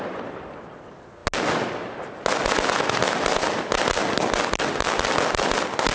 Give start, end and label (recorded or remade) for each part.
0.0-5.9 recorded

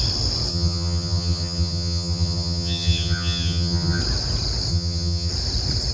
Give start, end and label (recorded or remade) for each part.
0.0-0.5 recorded; 0.5-4.0 remade; 4.0-4.7 recorded; 4.7-5.3 remade; 5.3-5.9 recorded